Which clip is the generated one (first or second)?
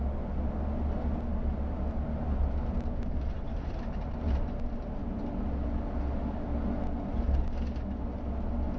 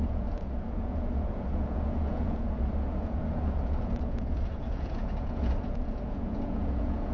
second